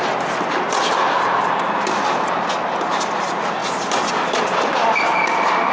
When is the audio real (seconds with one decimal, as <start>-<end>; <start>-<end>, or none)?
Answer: 0.0-5.7